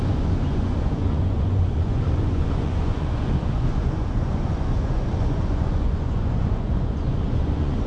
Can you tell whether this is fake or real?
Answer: fake